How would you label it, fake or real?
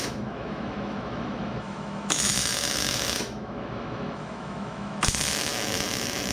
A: fake